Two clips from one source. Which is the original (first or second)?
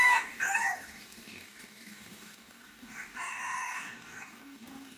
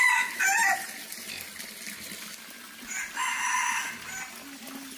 second